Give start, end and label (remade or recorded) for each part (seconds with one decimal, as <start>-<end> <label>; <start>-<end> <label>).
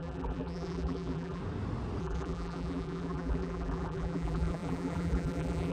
0.0-1.4 remade; 1.4-2.0 recorded; 2.0-5.7 remade